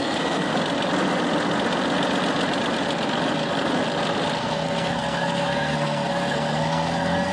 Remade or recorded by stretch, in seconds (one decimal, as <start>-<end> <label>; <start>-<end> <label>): 0.0-0.5 remade; 0.5-4.4 recorded; 4.4-7.3 remade